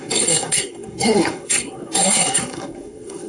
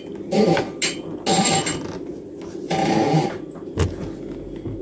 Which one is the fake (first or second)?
first